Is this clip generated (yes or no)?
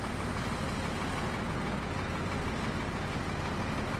no